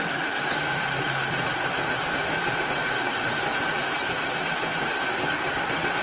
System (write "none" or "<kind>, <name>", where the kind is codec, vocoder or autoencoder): none